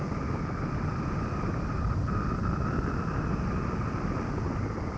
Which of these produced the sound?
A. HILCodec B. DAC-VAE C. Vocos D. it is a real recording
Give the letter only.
D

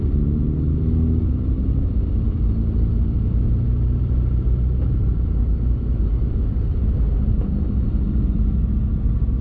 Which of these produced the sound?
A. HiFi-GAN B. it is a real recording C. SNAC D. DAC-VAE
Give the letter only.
B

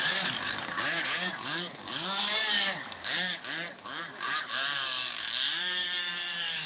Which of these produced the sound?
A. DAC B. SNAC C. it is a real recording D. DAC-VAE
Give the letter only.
A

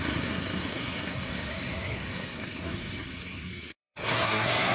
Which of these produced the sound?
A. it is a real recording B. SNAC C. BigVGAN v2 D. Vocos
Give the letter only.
B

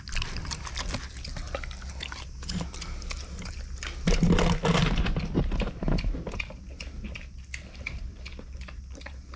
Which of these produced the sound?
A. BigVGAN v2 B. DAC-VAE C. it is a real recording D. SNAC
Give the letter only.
C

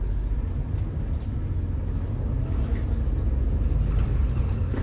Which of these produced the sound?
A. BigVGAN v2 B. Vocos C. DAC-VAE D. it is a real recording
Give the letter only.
D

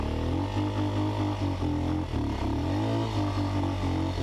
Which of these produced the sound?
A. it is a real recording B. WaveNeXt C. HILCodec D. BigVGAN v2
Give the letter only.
A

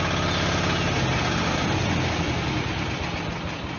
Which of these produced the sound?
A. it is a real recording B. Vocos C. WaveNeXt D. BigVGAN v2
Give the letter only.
A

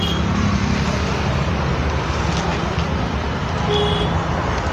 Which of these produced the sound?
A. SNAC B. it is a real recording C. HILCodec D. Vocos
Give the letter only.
B